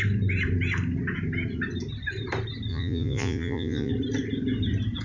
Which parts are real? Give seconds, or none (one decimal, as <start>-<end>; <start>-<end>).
0.0-2.7; 3.9-5.0